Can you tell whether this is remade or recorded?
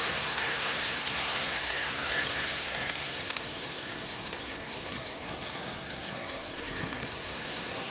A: remade